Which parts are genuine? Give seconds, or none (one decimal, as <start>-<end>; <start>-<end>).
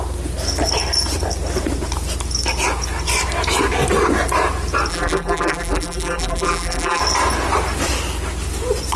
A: 0.0-4.9; 7.0-9.0